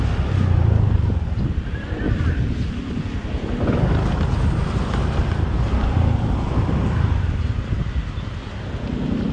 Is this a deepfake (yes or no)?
no